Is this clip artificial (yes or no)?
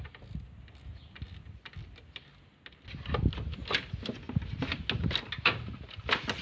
no